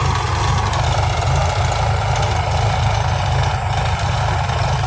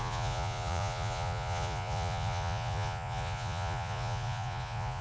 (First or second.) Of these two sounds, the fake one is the second